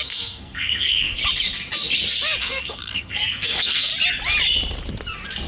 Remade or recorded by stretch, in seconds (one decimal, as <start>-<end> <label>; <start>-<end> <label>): 0.0-1.2 remade; 1.2-2.4 recorded; 2.4-3.9 remade; 3.9-5.5 recorded